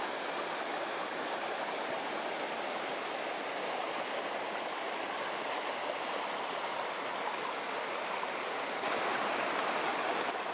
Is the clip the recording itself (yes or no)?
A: yes